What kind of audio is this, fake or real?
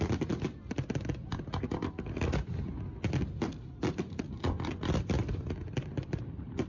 real